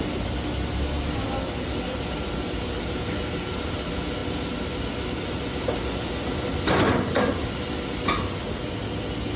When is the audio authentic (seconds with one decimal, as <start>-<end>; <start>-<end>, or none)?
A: 0.0-9.4